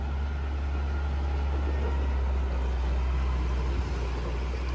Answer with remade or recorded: recorded